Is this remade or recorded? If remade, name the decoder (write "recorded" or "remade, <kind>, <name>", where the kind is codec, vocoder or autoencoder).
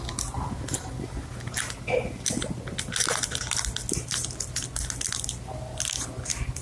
recorded